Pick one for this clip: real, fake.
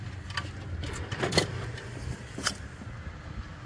real